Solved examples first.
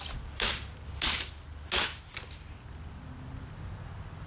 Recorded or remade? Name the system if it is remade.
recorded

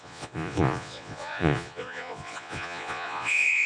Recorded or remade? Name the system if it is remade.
remade, vocoder, Vocos